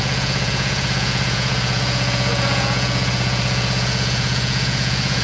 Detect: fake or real fake